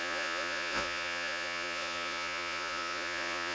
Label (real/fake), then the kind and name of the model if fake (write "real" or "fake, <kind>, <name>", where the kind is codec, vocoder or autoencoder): fake, vocoder, Vocos